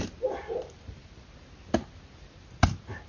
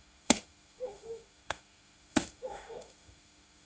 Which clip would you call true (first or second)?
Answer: first